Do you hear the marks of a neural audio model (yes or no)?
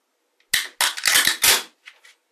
no